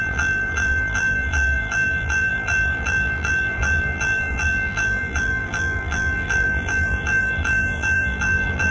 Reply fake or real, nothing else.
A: fake